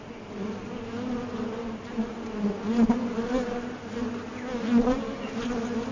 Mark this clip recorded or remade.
recorded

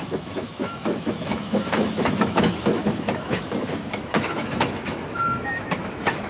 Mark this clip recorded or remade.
remade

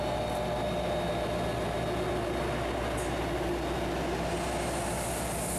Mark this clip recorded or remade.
recorded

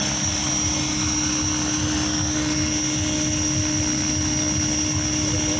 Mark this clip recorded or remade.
recorded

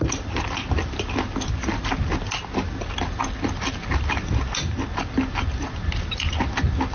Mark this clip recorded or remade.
recorded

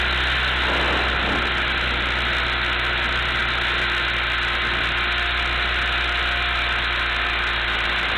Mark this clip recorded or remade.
recorded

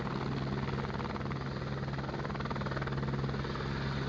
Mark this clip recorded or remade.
recorded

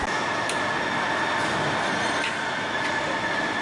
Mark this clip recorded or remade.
recorded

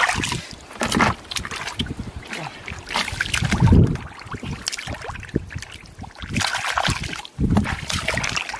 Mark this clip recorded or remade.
recorded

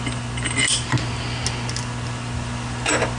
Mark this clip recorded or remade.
recorded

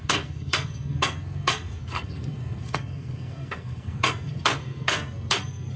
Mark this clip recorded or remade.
remade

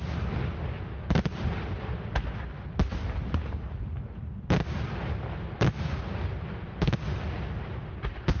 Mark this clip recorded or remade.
recorded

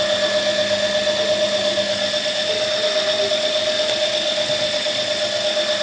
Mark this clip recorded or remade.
recorded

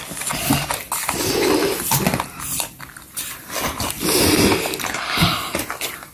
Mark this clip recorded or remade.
recorded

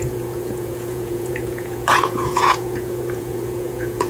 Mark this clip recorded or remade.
remade